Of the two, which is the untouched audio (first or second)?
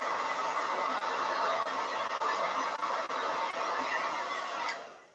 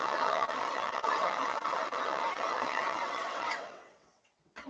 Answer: first